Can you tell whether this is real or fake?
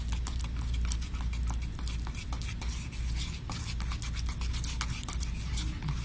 real